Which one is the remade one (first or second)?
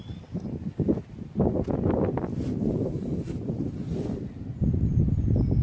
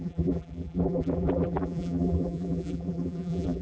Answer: second